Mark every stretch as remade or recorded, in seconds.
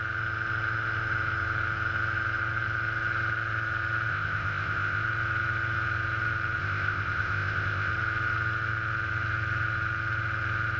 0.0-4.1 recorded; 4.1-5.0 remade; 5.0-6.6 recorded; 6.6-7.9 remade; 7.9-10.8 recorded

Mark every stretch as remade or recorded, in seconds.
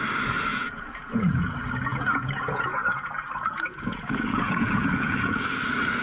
0.0-0.5 recorded; 0.5-1.5 remade; 1.5-1.9 recorded; 1.9-5.5 remade; 5.5-6.0 recorded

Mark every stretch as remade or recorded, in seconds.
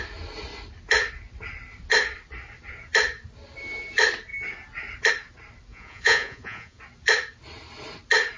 0.0-5.7 recorded; 5.7-6.8 remade; 6.8-8.4 recorded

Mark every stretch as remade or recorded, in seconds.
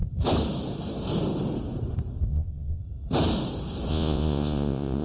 0.0-2.3 recorded; 2.3-2.8 remade; 2.8-3.9 recorded; 3.9-5.0 remade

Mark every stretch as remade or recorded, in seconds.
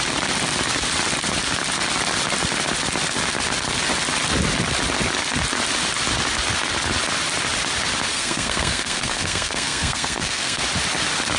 0.0-8.1 recorded; 8.1-10.6 remade; 10.6-11.4 recorded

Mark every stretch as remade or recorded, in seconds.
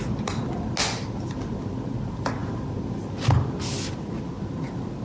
0.0-5.0 recorded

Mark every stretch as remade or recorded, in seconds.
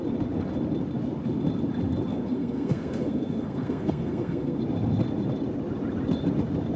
0.0-2.1 recorded; 2.1-4.6 remade; 4.6-6.8 recorded